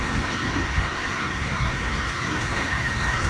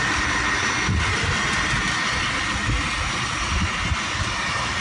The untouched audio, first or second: second